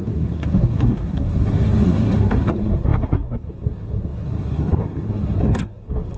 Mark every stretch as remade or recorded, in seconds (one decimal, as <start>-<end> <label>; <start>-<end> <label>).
0.0-6.2 remade